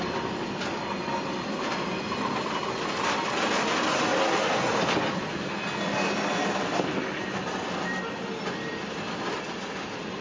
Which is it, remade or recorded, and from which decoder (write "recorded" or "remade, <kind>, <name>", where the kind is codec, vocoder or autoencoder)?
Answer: recorded